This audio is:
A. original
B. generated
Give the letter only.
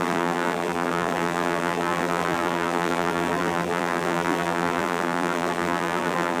B